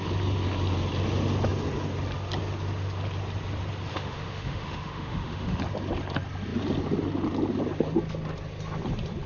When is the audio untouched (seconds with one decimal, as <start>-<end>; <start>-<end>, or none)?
0.0-3.9; 5.6-9.3